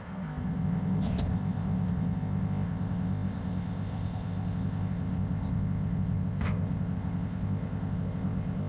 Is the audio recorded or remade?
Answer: remade